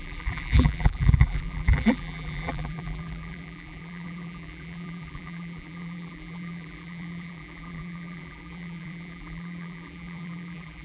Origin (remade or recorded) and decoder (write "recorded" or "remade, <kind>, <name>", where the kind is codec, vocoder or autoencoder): remade, vocoder, BigVGAN v2